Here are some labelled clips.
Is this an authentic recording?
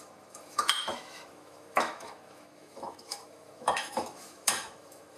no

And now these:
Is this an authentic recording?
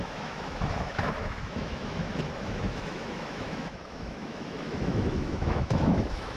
no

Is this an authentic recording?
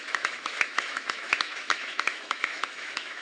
no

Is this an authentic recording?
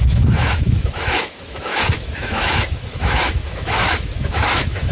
no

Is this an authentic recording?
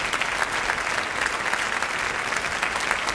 yes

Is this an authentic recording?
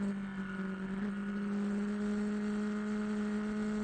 yes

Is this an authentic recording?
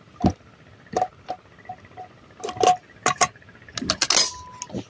yes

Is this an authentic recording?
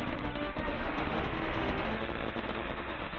no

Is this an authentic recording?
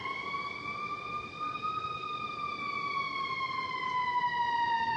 yes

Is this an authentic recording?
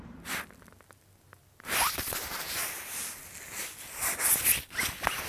yes